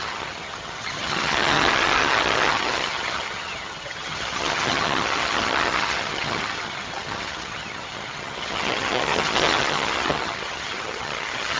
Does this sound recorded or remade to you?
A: remade